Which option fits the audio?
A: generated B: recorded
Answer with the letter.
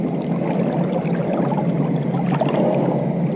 B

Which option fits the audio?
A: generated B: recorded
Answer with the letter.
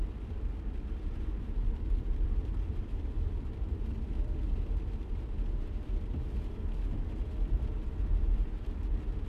A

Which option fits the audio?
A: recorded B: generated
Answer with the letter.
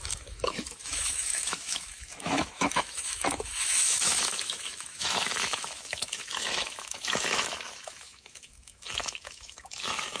B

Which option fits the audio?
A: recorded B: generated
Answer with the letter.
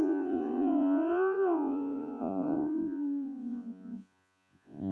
B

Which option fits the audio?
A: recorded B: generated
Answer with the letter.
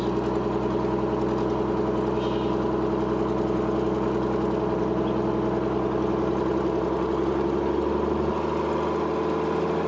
A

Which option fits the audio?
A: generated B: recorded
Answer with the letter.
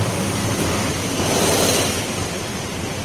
A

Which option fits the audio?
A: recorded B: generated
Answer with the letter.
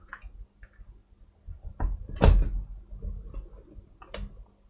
A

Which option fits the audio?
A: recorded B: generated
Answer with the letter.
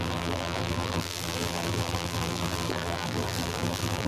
B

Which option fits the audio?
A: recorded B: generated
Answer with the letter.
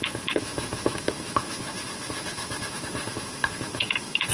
B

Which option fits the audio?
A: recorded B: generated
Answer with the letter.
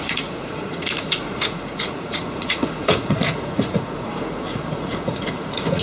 B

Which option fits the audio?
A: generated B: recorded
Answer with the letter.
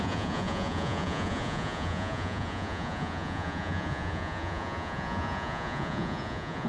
A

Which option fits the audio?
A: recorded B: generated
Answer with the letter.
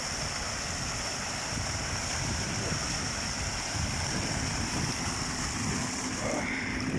A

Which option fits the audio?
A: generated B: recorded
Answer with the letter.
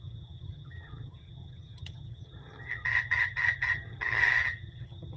A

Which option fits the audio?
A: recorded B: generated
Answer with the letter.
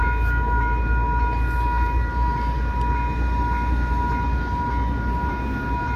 A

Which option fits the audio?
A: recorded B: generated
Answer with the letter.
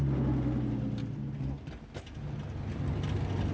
A